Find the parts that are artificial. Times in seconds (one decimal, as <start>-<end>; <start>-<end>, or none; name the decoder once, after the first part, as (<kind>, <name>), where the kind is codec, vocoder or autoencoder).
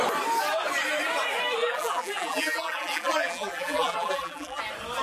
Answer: 1.6-4.6 (vocoder, BigVGAN v2)